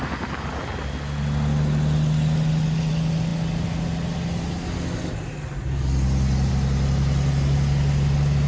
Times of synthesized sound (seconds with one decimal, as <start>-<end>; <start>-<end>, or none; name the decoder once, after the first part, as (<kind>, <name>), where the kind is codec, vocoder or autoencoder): none